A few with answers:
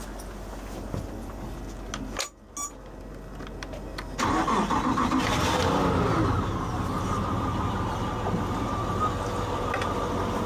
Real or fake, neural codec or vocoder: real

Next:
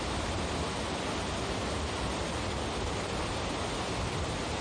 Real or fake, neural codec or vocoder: real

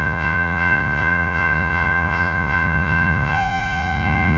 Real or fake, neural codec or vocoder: fake, vocoder, Vocos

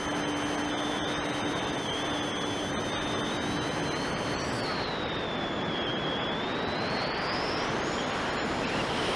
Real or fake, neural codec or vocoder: real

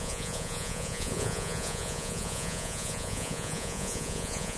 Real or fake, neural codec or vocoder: fake, vocoder, Vocos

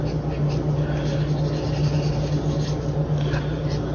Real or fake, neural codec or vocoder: real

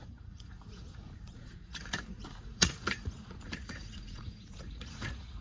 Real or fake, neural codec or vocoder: fake, vocoder, Vocos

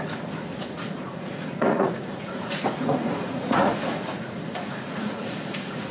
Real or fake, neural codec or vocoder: fake, vocoder, Vocos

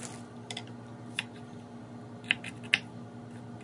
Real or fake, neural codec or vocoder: real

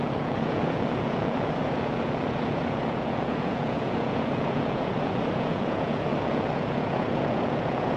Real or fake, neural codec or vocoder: fake, vocoder, Vocos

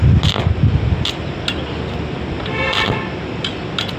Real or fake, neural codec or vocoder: real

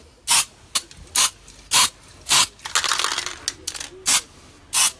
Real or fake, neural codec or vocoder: real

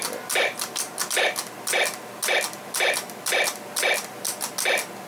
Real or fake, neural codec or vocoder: real